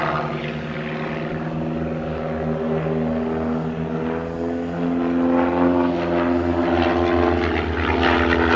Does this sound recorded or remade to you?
recorded